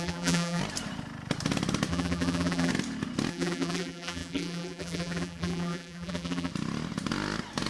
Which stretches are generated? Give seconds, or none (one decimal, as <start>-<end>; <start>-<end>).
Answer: 0.0-0.6; 1.9-2.7; 3.3-6.5